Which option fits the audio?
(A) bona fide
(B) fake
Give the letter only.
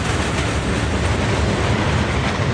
A